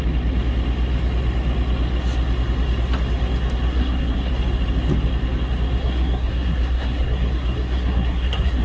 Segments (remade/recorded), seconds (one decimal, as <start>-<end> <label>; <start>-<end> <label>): 0.0-3.7 recorded; 3.7-4.3 remade; 4.3-5.8 recorded; 5.8-8.6 remade